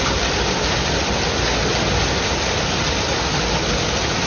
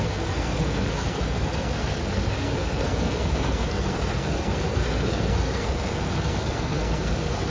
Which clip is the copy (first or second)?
second